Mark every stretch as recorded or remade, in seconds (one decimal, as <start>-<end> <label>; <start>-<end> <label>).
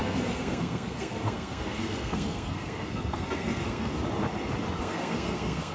0.0-3.9 remade; 3.9-4.8 recorded; 4.8-5.7 remade